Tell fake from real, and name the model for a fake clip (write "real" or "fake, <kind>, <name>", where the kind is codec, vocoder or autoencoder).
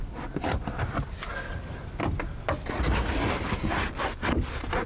real